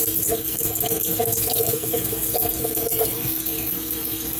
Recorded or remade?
remade